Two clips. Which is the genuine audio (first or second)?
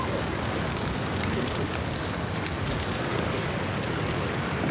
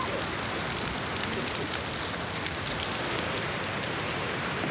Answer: second